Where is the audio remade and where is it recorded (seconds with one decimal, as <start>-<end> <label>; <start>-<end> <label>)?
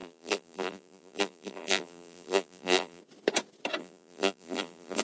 0.0-3.0 remade; 3.0-3.8 recorded; 3.8-5.0 remade